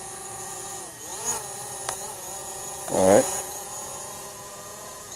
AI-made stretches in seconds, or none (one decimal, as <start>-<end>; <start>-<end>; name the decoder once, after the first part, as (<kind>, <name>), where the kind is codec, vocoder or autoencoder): 0.0-1.1 (vocoder, Vocos); 1.9-5.2